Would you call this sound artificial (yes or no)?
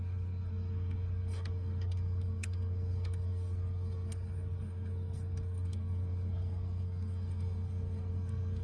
yes